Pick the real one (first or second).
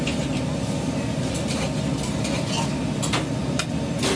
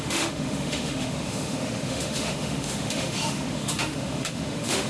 first